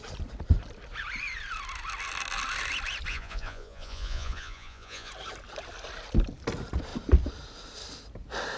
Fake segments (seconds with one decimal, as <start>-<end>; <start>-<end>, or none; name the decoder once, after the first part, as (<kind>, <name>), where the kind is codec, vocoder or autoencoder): 3.1-5.1 (vocoder, Vocos)